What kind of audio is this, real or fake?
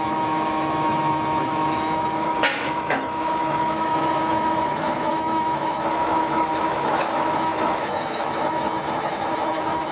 fake